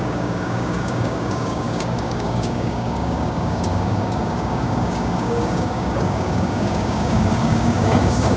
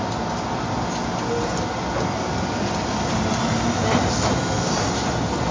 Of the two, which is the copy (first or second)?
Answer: first